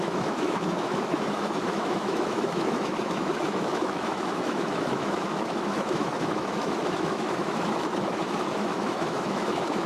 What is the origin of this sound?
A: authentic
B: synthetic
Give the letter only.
B